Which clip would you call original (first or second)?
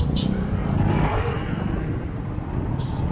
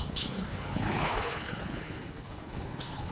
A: first